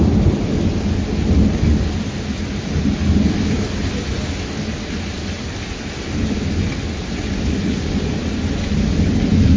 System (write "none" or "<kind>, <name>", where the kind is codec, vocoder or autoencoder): none